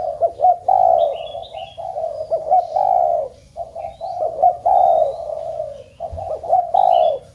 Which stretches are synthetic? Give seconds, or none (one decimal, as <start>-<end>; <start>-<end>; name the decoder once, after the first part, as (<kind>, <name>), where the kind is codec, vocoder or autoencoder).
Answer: 3.1-6.6 (vocoder, Vocos)